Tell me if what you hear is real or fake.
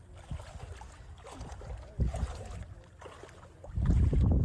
real